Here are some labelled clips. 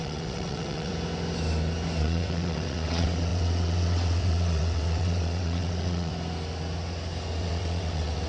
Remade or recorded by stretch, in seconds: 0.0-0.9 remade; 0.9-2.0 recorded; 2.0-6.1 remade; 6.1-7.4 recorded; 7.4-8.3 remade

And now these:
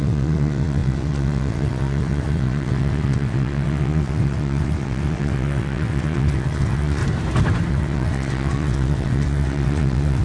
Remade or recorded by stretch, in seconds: 0.0-7.0 remade; 7.0-7.7 recorded; 7.7-10.2 remade

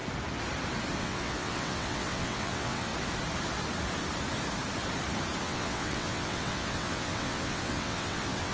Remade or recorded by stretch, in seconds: 0.0-1.0 recorded; 1.0-2.9 remade; 2.9-5.4 recorded; 5.4-8.5 remade

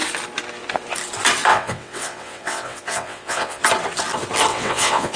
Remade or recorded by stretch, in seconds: 0.0-1.5 recorded; 1.5-3.6 remade; 3.6-4.5 recorded; 4.5-5.2 remade

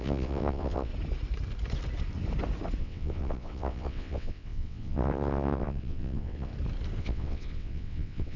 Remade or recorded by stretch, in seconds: 0.0-0.9 remade; 0.9-2.8 recorded; 2.8-6.5 remade; 6.5-7.0 recorded; 7.0-8.4 remade

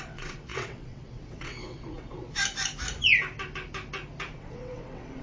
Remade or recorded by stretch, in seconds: 0.0-2.4 remade; 2.4-4.3 recorded; 4.3-5.2 remade

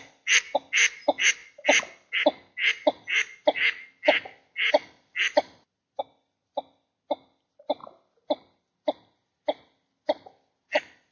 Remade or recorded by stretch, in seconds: 0.0-11.1 recorded

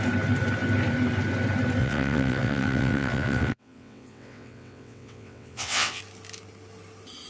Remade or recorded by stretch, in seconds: 0.0-1.8 recorded; 1.8-6.0 remade; 6.0-7.3 recorded